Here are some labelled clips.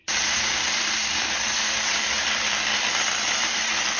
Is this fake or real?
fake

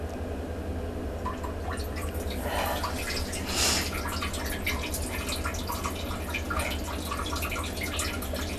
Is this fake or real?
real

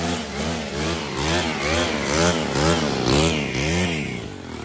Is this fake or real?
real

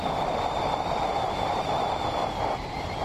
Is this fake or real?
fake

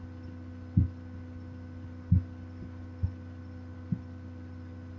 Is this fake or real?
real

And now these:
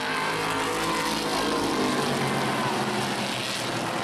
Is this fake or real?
real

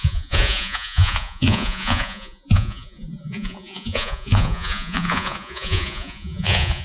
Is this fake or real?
fake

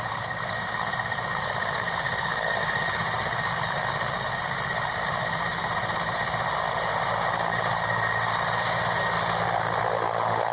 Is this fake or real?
real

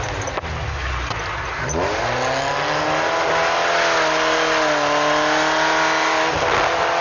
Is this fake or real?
real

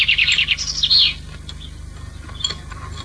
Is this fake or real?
real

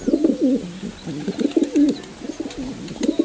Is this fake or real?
real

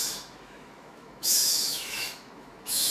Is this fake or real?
fake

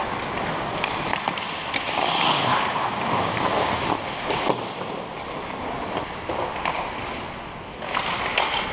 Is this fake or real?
real